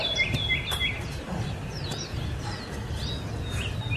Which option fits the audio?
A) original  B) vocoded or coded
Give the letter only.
A